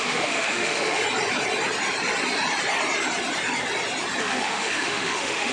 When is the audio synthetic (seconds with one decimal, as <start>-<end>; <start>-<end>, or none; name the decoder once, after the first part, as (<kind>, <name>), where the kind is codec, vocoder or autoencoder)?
0.0-1.0 (autoencoder, DAC-VAE); 4.2-5.5